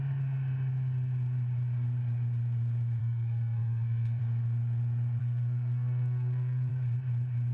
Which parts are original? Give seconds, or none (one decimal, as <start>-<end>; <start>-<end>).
0.0-3.0; 4.2-5.2; 6.7-7.5